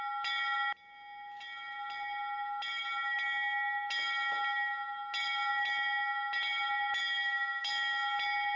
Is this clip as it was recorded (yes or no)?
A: yes